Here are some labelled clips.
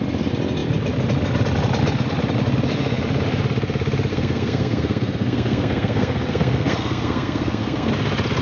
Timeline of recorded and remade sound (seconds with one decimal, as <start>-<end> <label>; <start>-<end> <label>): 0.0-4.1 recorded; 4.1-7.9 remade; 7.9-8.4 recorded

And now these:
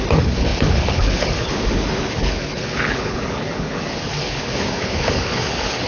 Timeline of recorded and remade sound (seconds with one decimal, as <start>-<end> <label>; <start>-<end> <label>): 0.0-5.9 remade

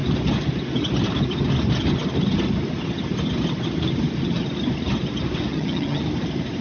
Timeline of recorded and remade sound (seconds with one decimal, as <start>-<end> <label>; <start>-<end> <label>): 0.0-5.5 recorded; 5.5-6.0 remade; 6.0-6.6 recorded

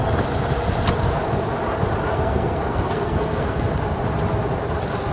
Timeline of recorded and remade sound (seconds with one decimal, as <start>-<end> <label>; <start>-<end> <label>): 0.0-2.1 recorded; 2.1-3.7 remade; 3.7-5.1 recorded